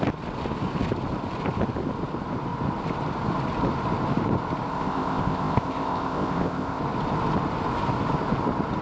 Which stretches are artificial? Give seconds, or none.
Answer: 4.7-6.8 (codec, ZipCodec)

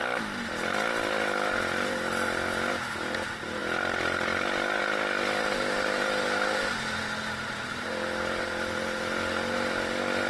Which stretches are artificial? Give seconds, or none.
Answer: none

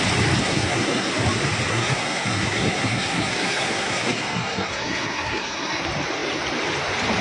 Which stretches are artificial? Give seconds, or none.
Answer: 0.4-1.1 (codec, SNAC); 1.7-5.8

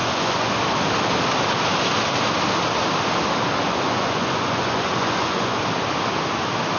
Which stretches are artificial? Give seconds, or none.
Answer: 0.0-0.5 (vocoder, Vocos); 3.6-5.6